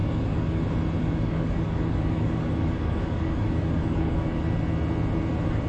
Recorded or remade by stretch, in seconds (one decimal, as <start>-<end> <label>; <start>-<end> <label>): 0.0-0.6 remade; 0.6-1.0 recorded; 1.0-4.4 remade; 4.4-5.7 recorded